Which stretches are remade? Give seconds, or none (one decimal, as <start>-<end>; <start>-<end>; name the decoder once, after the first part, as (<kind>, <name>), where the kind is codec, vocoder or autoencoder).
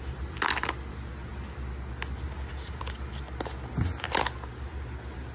none